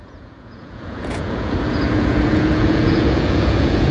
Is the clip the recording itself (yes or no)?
no